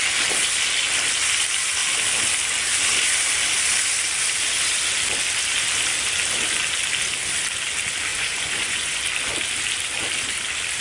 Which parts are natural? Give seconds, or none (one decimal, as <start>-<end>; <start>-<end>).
0.0-8.1; 9.0-10.8